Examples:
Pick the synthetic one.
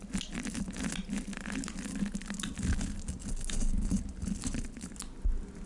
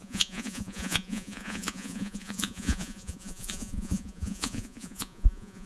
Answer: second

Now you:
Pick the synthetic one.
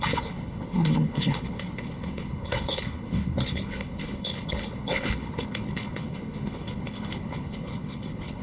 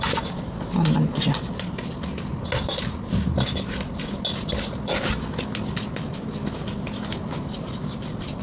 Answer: first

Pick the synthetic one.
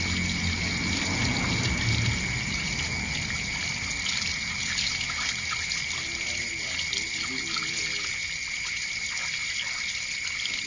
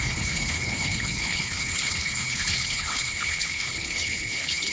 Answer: second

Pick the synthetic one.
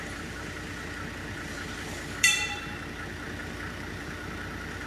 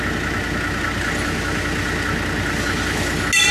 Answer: first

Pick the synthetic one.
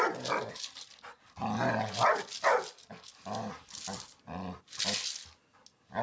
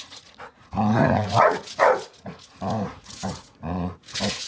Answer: second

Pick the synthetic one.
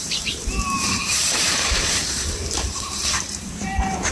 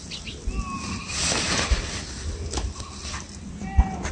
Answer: first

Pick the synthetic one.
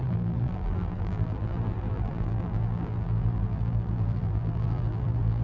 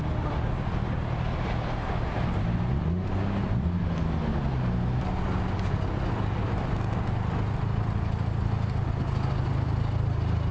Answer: first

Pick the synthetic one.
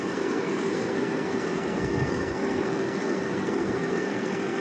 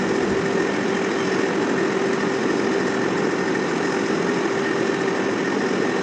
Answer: first